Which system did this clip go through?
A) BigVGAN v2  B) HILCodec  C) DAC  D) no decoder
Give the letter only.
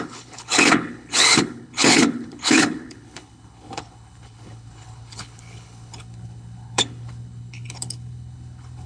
B